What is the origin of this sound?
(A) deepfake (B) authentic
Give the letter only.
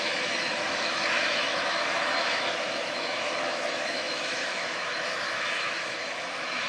A